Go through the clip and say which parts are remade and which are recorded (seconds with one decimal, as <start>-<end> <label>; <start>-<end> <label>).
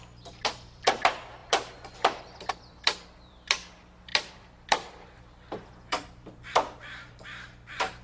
0.0-8.0 remade